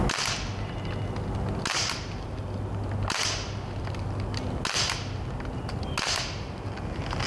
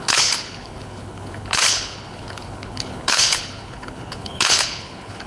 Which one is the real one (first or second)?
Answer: first